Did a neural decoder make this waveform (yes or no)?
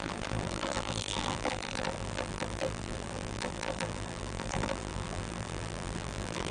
yes